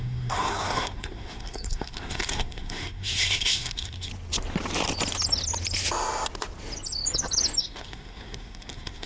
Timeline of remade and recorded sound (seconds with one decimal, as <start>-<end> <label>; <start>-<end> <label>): 0.0-4.1 remade; 4.1-7.6 recorded; 7.6-9.1 remade